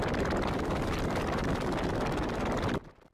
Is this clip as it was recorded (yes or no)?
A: yes